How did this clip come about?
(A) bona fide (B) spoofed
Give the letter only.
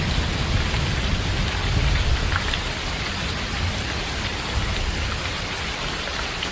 A